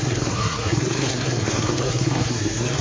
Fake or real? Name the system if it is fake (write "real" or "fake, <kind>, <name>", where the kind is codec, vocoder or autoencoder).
fake, codec, SNAC